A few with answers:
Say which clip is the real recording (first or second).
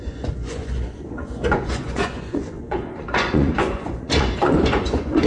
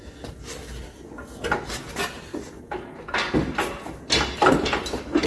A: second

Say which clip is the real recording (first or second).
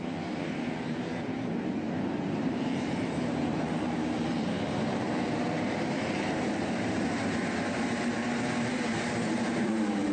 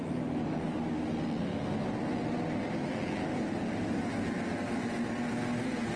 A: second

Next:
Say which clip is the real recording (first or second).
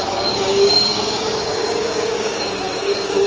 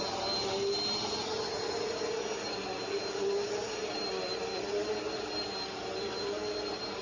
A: second